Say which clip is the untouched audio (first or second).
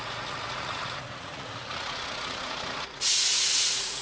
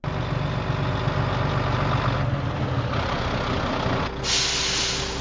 second